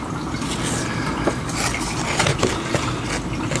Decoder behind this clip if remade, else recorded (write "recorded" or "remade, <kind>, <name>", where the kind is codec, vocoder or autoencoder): recorded